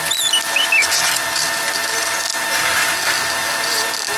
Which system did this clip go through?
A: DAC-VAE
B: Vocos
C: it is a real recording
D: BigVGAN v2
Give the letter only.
C